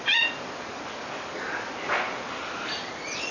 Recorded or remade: recorded